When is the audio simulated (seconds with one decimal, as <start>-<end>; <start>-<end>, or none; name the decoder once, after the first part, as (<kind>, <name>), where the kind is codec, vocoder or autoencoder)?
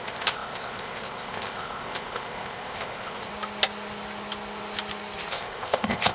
0.0-3.3 (codec, ZipCodec); 5.3-6.1